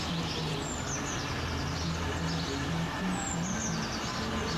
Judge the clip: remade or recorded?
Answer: recorded